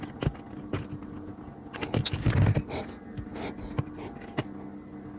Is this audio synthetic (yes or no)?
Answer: no